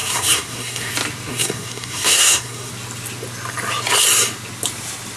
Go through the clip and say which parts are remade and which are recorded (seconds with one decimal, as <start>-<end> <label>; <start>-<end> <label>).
0.0-0.9 remade; 0.9-1.3 recorded; 1.3-2.7 remade; 2.7-5.2 recorded